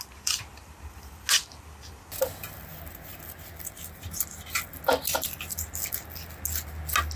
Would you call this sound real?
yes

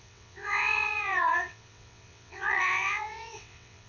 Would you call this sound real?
no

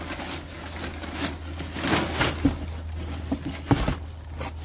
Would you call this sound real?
yes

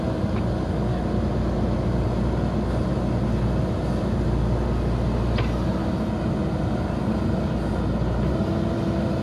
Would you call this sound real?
yes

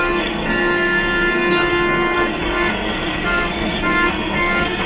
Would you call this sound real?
no